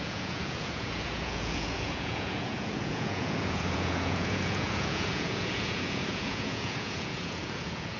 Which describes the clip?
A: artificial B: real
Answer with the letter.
A